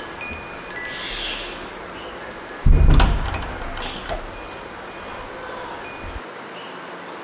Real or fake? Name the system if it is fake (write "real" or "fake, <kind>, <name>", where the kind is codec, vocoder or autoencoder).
real